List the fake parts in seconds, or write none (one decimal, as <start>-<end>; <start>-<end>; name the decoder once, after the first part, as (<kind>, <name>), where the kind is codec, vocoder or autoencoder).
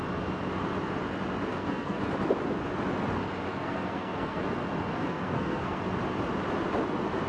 1.5-2.0 (codec, SNAC); 3.5-4.4; 4.9-5.8